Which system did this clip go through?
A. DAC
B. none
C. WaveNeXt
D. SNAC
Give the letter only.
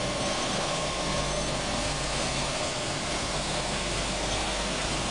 D